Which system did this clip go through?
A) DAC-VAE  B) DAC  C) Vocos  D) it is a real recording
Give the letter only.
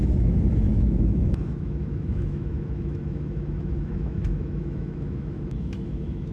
A